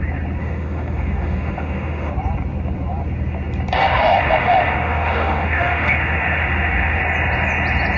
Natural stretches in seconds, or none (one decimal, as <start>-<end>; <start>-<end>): 0.0-0.4; 2.1-3.8; 7.0-8.0